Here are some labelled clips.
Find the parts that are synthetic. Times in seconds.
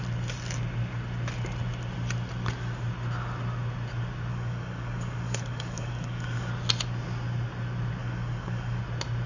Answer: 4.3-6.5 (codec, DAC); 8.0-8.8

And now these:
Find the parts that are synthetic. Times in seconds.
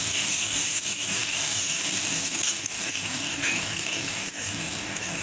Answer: 0.0-5.2 (codec, DAC)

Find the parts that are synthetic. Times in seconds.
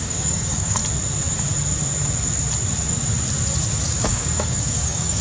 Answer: 0.0-0.8 (codec, DAC); 3.9-5.2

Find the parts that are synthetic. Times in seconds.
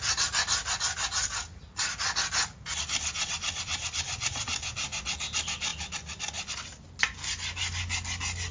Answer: none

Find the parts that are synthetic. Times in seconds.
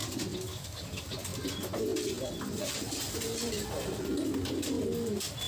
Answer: 0.5-1.1 (codec, DAC)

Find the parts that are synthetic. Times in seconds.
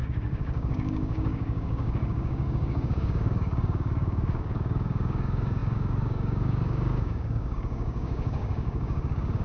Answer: 0.0-9.4 (codec, DAC)